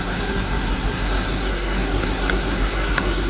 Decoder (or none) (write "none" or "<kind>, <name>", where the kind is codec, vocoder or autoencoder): codec, SNAC